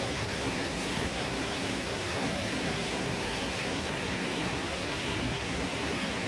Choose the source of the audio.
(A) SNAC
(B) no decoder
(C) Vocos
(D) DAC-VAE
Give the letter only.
A